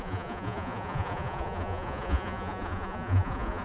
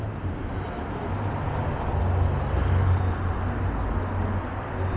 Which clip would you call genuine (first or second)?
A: second